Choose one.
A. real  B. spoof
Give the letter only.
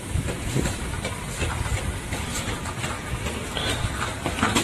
B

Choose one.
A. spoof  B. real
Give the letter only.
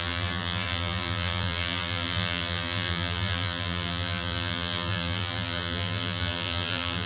A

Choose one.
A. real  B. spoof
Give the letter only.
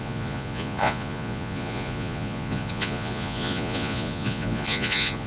B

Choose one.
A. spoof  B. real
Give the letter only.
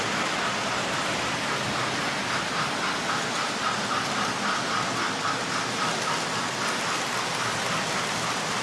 B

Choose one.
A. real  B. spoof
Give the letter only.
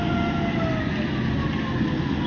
A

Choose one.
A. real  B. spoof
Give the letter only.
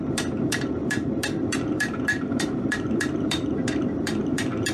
B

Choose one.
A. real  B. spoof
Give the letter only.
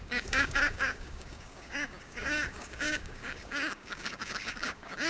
B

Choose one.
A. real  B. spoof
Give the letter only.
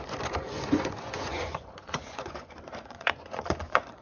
B